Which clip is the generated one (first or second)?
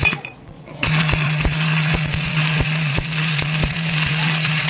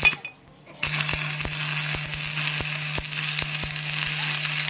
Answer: first